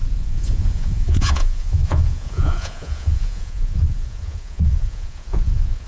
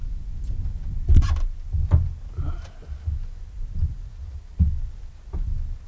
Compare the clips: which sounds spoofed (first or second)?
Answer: first